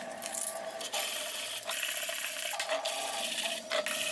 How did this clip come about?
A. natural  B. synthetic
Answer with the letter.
A